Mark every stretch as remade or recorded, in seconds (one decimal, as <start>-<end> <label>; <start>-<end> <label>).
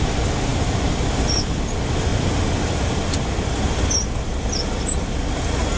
0.0-5.8 recorded